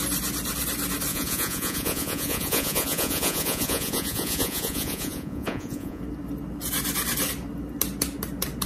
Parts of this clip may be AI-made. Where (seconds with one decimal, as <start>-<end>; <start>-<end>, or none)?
1.1-6.0